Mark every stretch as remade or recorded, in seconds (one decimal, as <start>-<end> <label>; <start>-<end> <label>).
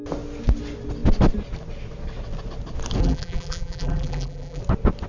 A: 0.0-3.0 recorded; 3.0-4.6 remade; 4.6-5.1 recorded